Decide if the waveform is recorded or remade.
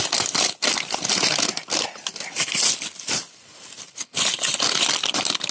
recorded